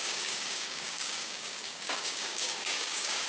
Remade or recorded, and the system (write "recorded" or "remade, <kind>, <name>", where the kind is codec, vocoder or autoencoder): remade, codec, DAC